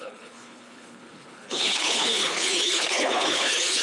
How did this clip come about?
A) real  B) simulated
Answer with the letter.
B